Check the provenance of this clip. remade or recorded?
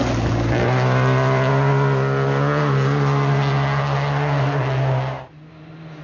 recorded